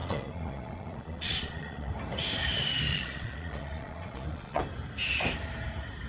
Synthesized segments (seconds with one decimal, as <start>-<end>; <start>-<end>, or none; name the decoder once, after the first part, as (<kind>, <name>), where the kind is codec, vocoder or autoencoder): 0.0-1.9 (vocoder, Vocos); 2.9-4.6

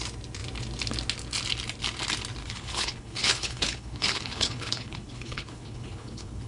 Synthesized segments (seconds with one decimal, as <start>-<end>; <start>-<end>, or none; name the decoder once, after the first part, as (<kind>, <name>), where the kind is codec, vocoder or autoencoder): 2.4-6.5 (codec, HILCodec)

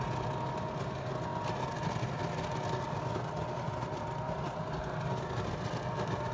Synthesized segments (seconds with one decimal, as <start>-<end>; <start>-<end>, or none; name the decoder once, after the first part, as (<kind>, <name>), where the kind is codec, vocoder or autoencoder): none

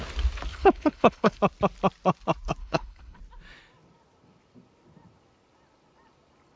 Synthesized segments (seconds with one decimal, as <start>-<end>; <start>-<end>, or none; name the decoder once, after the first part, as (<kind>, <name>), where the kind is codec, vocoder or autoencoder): 0.5-1.4 (codec, HILCodec); 2.6-3.2

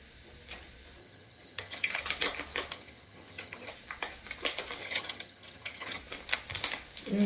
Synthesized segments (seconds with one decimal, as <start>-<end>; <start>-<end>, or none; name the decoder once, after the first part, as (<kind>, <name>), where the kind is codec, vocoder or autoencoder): 1.0-2.0 (vocoder, HiFi-GAN); 2.7-3.7; 4.8-6.0